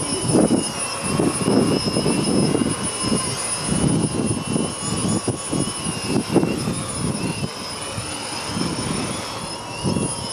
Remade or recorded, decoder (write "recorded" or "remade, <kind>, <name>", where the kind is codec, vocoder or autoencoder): recorded